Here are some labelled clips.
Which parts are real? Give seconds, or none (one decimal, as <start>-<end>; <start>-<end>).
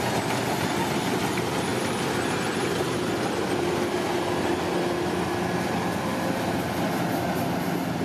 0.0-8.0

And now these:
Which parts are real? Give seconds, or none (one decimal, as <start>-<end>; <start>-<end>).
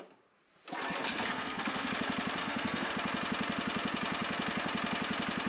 0.0-1.0; 1.9-2.4; 2.9-5.5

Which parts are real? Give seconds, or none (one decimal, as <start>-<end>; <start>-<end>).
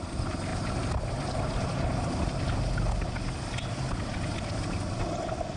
0.0-5.6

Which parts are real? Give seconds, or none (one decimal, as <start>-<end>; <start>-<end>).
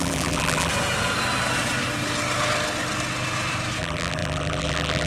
0.7-3.8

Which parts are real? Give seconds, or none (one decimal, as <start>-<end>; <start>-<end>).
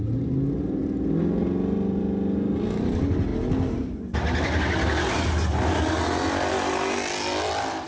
0.0-7.9